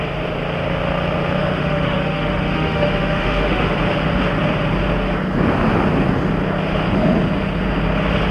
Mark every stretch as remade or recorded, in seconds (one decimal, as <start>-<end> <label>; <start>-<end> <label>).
0.0-1.4 recorded; 1.4-3.7 remade; 3.7-8.3 recorded